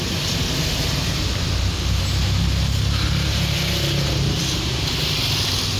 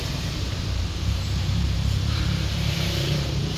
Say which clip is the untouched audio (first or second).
first